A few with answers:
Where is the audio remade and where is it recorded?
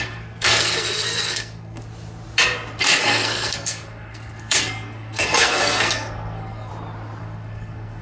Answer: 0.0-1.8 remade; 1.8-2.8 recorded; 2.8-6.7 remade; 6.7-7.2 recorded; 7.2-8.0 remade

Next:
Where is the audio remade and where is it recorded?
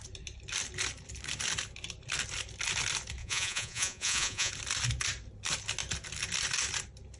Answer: 0.0-3.2 recorded; 3.2-4.5 remade; 4.5-7.2 recorded